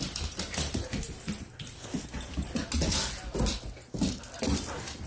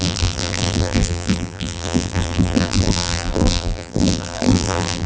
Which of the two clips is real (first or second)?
first